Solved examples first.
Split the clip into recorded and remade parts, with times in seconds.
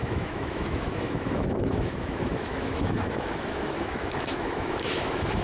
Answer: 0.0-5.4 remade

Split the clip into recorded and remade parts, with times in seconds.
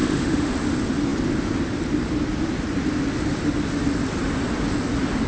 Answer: 0.0-0.5 remade; 0.5-5.3 recorded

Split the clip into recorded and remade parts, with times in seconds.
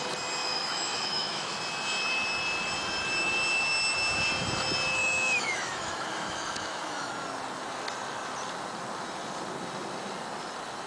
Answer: 0.0-0.4 recorded; 0.4-1.6 remade; 1.6-5.0 recorded; 5.0-7.1 remade; 7.1-10.9 recorded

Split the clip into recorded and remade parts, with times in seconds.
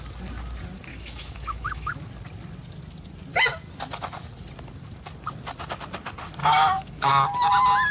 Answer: 0.0-0.9 recorded; 0.9-1.9 remade; 1.9-6.4 recorded; 6.4-7.1 remade; 7.1-7.9 recorded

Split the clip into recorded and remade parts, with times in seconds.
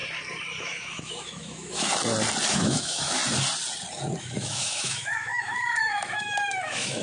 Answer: 0.0-0.6 recorded; 0.6-1.9 remade; 1.9-2.5 recorded; 2.5-3.2 remade; 3.2-4.2 recorded; 4.2-7.0 remade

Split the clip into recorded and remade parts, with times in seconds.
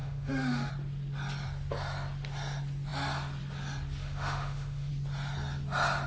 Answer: 0.0-0.7 remade; 0.7-4.0 recorded; 4.0-4.9 remade; 4.9-6.1 recorded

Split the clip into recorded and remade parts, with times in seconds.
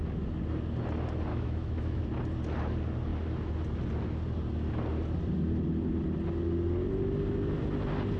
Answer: 0.0-1.3 recorded; 1.3-2.0 remade; 2.0-8.2 recorded